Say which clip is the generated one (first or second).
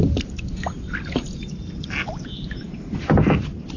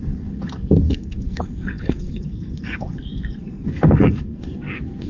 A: second